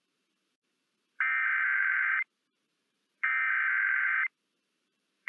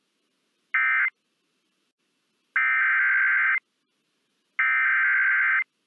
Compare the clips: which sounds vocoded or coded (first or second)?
first